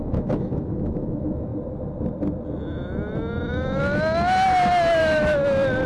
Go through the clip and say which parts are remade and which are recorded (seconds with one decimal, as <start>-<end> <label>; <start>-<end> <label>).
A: 0.0-1.5 remade; 1.5-5.0 recorded; 5.0-5.4 remade; 5.4-5.9 recorded